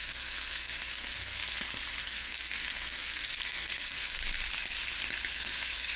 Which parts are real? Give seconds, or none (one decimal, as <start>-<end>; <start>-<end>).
1.4-2.0; 4.2-5.3